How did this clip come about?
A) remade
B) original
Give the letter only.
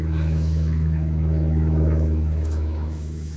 A